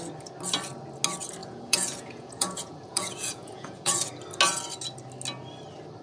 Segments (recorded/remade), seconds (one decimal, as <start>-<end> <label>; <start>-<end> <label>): 0.0-1.4 recorded; 1.4-4.1 remade; 4.1-6.0 recorded

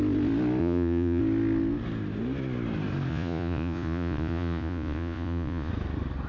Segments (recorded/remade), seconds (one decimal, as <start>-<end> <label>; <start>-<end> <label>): 0.0-0.6 recorded; 0.6-1.2 remade; 1.2-3.1 recorded; 3.1-5.7 remade; 5.7-6.3 recorded

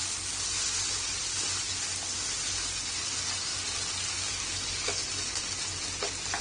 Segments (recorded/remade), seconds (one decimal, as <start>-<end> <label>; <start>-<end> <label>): 0.0-6.4 recorded

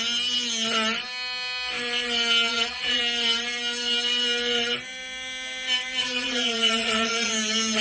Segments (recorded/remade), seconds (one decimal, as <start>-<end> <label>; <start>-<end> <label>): 0.0-2.5 recorded; 2.5-3.0 remade; 3.0-6.0 recorded; 6.0-7.3 remade; 7.3-7.8 recorded

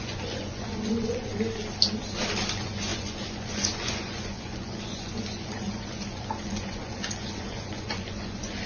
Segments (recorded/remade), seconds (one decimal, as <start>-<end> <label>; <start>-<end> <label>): 0.0-1.3 remade; 1.3-2.5 recorded; 2.5-8.7 remade

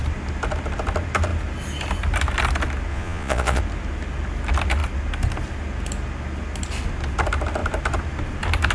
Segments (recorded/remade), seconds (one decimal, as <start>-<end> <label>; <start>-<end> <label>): 0.0-2.9 recorded; 2.9-3.6 remade; 3.6-8.7 recorded